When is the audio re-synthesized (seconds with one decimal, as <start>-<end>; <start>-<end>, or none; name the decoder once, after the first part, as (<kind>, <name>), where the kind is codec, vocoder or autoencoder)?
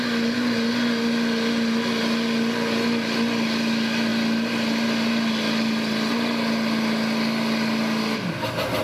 none